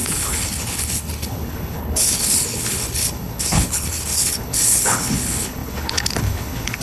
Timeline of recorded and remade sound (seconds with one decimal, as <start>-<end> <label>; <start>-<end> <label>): 0.0-6.8 remade